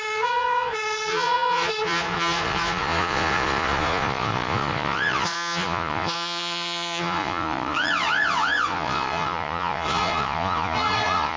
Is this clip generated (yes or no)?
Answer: yes